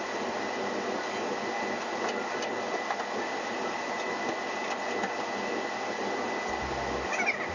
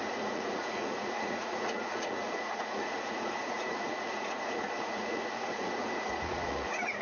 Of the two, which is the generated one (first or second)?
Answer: second